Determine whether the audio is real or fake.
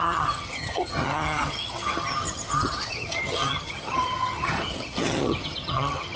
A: fake